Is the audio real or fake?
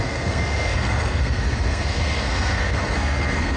fake